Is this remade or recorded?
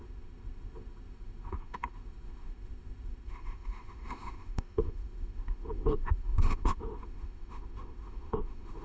remade